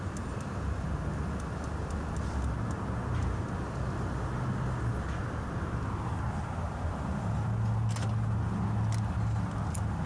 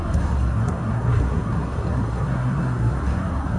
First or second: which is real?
first